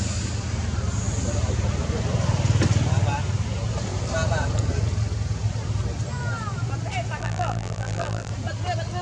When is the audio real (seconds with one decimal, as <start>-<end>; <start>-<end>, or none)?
0.0-7.2; 8.3-9.0